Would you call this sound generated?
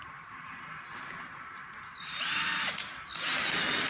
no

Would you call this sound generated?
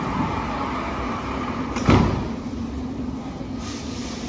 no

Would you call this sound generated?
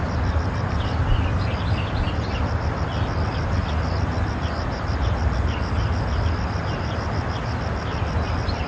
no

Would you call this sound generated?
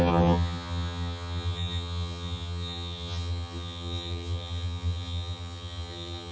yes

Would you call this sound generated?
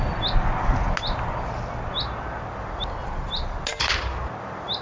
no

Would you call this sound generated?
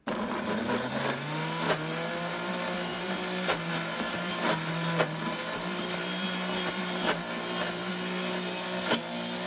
no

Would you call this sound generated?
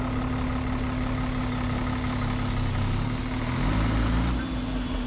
no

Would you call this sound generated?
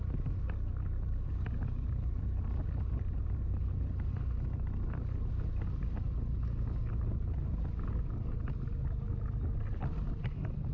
no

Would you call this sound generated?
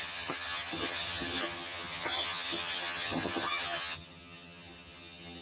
yes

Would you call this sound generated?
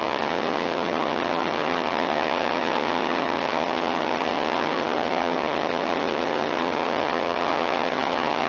yes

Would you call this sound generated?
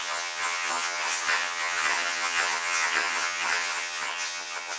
yes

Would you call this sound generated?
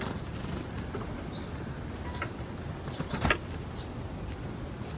no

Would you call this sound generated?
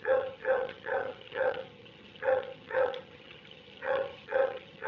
yes